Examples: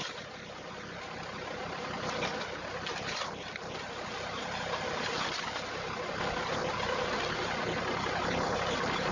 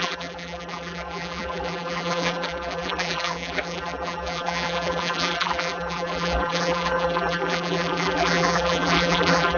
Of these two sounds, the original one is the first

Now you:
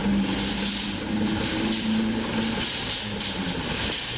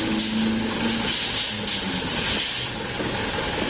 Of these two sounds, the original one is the second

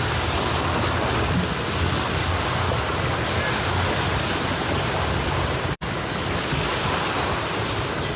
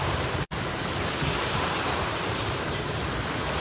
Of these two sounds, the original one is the first